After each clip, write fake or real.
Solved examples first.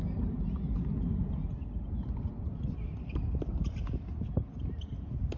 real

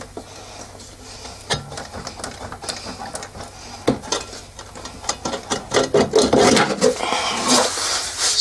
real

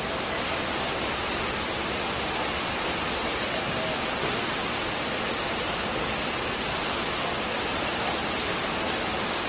real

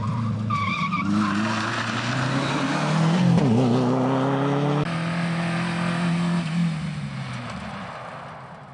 real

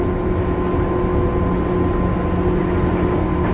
real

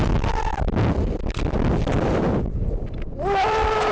fake